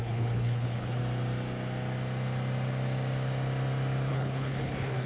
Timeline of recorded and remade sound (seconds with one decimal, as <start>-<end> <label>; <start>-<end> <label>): 0.0-1.0 remade; 1.0-4.1 recorded; 4.1-5.1 remade